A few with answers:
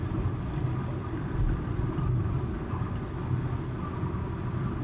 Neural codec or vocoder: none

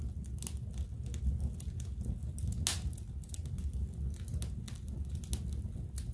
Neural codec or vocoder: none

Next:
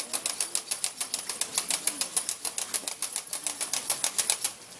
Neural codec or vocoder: none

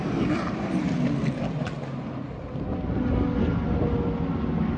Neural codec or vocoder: none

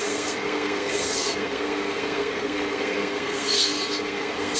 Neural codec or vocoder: codec, SNAC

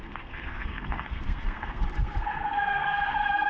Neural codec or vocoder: codec, SNAC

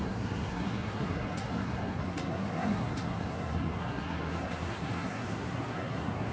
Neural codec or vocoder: codec, SNAC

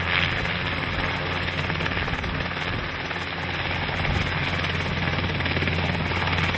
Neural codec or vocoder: none